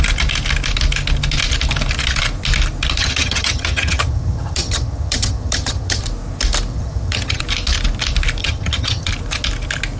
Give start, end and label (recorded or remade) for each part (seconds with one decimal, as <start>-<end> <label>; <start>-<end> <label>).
0.0-3.0 recorded; 3.0-6.0 remade; 6.0-6.7 recorded; 6.7-7.4 remade; 7.4-8.4 recorded; 8.4-9.1 remade; 9.1-10.0 recorded